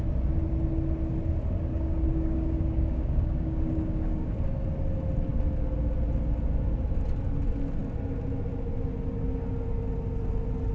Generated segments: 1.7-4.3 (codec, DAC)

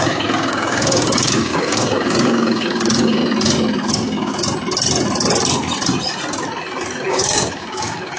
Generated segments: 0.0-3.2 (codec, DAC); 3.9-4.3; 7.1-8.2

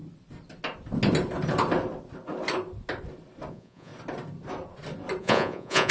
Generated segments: 3.5-3.9 (vocoder, Vocos); 5.2-5.9